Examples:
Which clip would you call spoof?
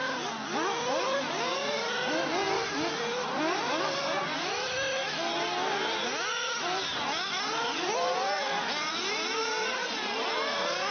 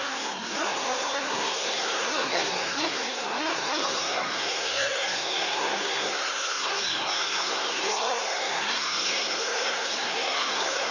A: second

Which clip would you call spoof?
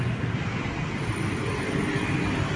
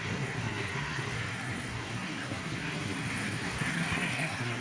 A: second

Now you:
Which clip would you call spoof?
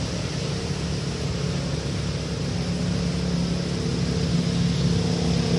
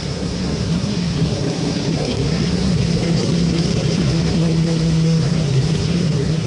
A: second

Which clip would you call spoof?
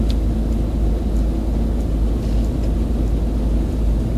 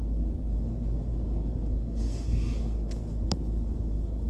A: second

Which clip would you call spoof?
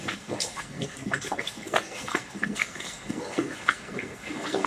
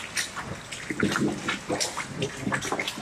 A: first